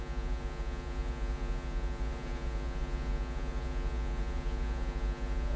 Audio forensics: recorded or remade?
remade